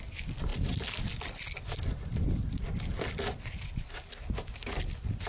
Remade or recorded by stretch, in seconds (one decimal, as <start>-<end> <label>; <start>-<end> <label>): 0.0-5.3 recorded